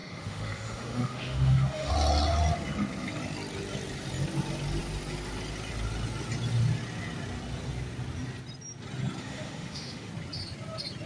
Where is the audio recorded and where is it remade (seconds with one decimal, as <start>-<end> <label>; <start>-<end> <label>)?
0.0-1.9 remade; 1.9-9.2 recorded; 9.2-10.1 remade; 10.1-11.1 recorded